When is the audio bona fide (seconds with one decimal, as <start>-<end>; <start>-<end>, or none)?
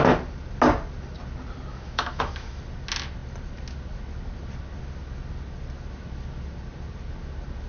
0.0-1.7; 2.6-7.7